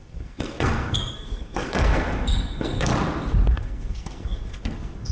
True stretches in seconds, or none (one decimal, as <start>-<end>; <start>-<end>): 2.9-3.5